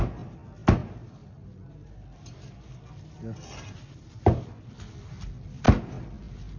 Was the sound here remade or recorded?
recorded